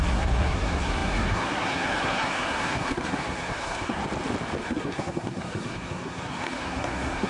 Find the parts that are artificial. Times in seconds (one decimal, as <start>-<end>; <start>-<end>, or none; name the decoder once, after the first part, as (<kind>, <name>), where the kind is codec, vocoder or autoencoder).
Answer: 0.0-4.0 (codec, SNAC); 4.6-7.3